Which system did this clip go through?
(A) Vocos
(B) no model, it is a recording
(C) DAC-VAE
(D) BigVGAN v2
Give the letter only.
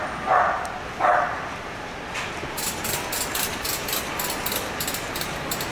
B